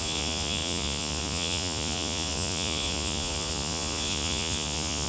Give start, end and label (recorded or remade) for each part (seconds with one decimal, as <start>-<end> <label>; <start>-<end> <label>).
0.0-5.1 remade

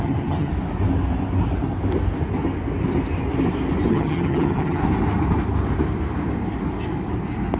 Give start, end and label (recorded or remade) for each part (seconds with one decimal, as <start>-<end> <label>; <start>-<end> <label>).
0.0-0.5 remade; 0.5-3.9 recorded; 3.9-4.8 remade; 4.8-7.6 recorded

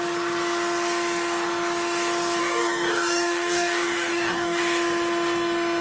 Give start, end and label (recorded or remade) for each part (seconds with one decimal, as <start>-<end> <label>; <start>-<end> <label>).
0.0-2.4 recorded; 2.4-4.6 remade; 4.6-5.8 recorded

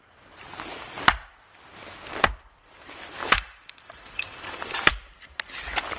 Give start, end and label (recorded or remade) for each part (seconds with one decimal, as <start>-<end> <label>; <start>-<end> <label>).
0.0-3.2 recorded; 3.2-4.8 remade; 4.8-6.0 recorded